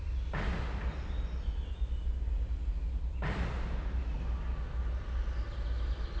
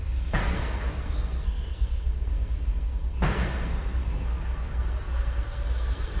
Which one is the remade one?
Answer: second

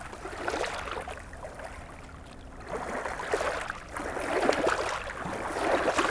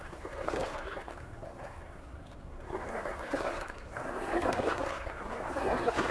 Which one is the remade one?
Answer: second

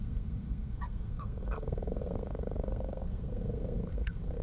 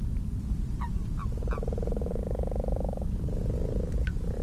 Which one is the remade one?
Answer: first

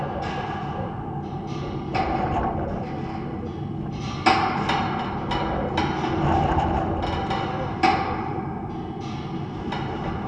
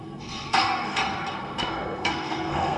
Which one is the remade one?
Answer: second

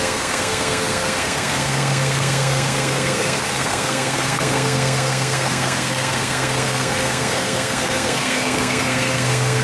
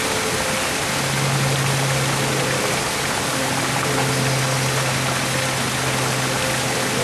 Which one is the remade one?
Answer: first